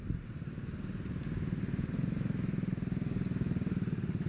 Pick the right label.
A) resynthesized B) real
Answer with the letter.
B